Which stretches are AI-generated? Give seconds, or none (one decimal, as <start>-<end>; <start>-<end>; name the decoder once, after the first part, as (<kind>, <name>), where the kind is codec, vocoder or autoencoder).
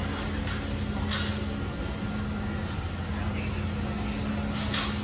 none